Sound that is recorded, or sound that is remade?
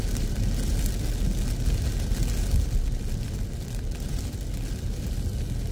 recorded